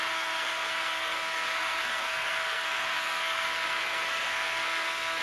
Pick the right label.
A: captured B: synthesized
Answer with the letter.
B